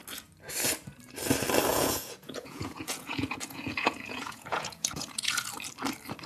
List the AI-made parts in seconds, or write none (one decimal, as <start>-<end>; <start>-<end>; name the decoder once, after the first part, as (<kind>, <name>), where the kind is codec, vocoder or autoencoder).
1.7-5.5 (vocoder, Vocos)